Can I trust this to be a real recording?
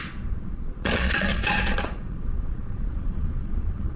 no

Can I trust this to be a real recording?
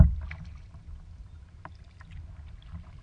yes